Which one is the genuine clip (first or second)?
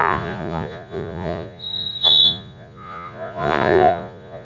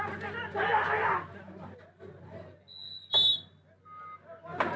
second